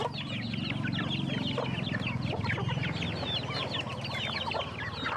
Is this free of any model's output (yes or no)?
yes